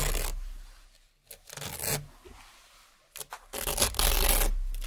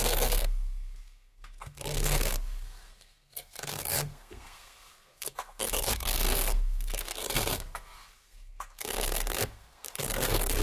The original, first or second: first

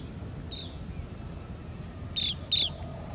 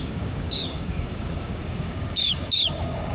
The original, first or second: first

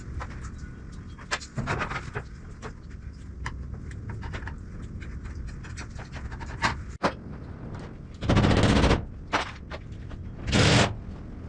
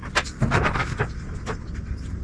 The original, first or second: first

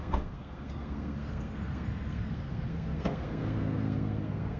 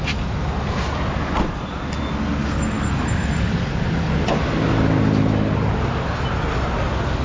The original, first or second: second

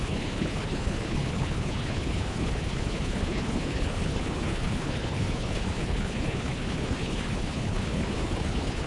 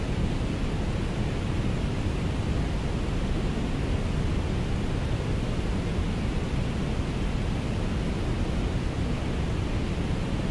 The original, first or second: second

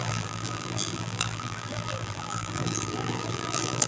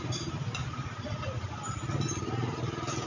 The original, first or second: second